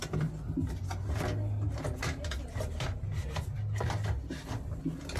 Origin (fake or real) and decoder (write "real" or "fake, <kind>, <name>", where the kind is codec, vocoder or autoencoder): real